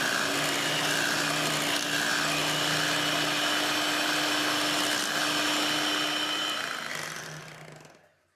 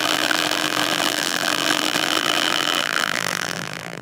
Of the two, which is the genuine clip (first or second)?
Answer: first